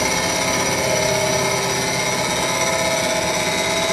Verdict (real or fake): real